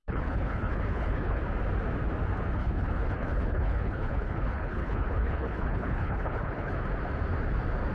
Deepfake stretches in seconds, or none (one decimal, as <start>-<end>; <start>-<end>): 0.0-1.4; 2.6-6.7